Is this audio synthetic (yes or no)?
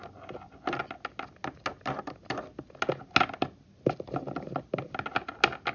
no